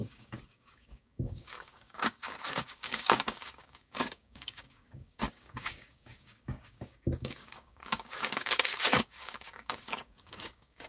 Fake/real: fake